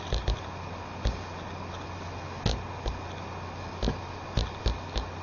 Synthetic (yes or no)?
no